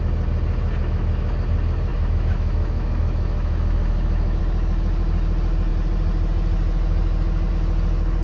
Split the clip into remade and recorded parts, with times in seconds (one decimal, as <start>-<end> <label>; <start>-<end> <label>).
0.0-0.8 recorded; 0.8-1.3 remade; 1.3-1.9 recorded; 1.9-4.4 remade; 4.4-8.2 recorded

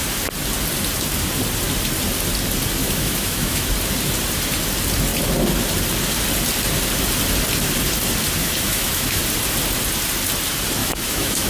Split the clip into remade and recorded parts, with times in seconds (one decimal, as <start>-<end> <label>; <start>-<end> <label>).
0.0-2.8 recorded; 2.8-3.6 remade; 3.6-8.4 recorded; 8.4-9.2 remade; 9.2-10.8 recorded; 10.8-11.5 remade

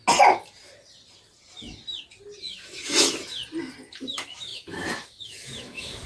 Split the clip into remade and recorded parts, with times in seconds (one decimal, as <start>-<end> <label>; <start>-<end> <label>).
0.0-2.4 recorded; 2.4-3.4 remade; 3.4-4.0 recorded; 4.0-6.1 remade

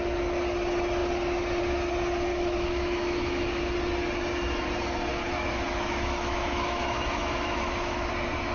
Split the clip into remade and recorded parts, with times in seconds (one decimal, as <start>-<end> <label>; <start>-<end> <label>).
0.0-2.3 recorded; 2.3-3.6 remade; 3.6-5.1 recorded; 5.1-8.1 remade; 8.1-8.5 recorded

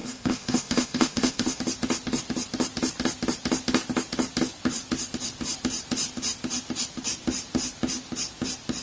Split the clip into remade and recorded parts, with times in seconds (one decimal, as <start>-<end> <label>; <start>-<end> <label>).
0.0-1.6 remade; 1.6-8.8 recorded

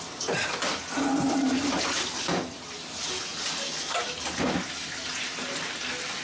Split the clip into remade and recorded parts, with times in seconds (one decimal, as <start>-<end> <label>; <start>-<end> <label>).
0.0-6.2 recorded

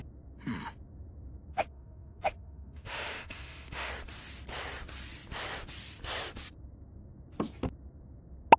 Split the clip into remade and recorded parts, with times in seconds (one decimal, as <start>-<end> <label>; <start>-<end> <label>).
0.0-1.5 recorded; 1.5-3.9 remade; 3.9-8.6 recorded